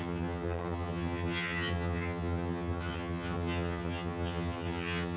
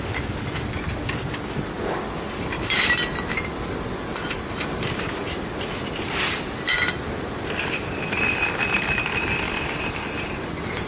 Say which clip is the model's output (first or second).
first